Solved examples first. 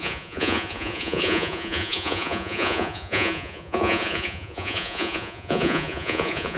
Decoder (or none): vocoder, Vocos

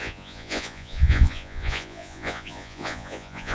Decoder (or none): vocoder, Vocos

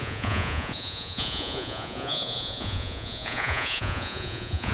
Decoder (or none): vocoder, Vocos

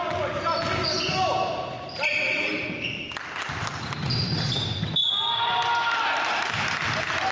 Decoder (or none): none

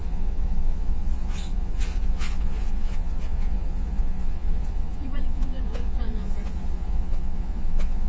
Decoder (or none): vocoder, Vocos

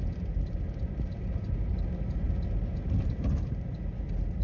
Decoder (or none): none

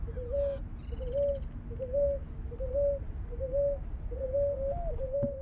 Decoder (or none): none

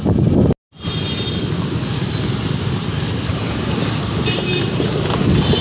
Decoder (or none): none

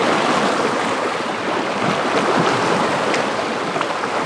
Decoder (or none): none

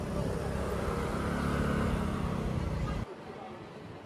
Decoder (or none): none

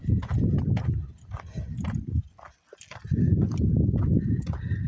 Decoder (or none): none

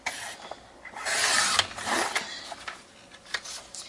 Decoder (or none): none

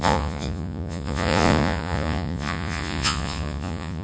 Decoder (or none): vocoder, Vocos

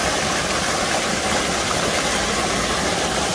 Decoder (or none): none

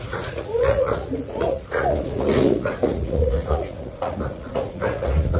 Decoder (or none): vocoder, Vocos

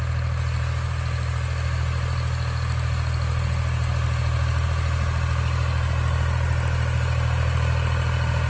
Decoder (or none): none